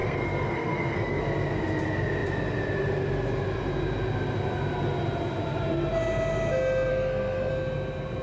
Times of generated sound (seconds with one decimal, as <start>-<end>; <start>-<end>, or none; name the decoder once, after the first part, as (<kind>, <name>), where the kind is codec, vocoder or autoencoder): 0.0-1.2 (codec, SNAC); 6.9-7.5